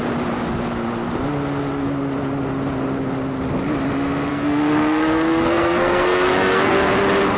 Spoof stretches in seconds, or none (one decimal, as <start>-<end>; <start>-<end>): 4.3-6.9